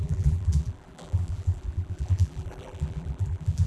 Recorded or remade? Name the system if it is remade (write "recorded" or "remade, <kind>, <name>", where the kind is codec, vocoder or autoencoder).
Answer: remade, vocoder, BigVGAN v2